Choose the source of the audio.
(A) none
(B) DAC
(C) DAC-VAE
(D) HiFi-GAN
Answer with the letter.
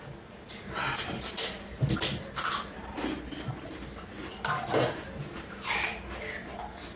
A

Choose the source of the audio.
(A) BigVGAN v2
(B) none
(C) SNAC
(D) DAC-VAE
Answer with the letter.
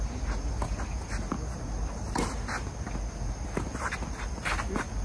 B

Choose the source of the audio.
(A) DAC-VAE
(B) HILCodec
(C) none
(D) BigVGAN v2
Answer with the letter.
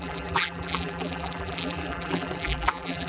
D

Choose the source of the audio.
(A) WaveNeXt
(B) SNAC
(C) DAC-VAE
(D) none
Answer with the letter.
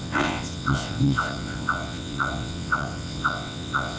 A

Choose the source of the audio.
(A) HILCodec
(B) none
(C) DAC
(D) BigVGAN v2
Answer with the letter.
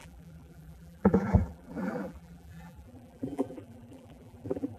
D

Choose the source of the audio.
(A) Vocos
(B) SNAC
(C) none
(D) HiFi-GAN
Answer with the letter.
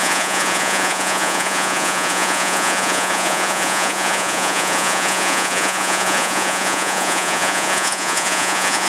A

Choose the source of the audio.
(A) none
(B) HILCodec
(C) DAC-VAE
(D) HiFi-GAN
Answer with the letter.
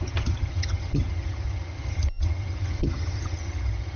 D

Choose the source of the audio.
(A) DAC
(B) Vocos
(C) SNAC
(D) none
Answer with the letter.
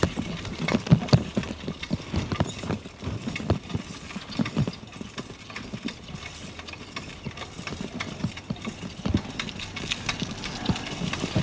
D